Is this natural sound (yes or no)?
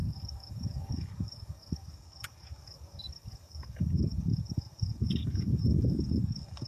no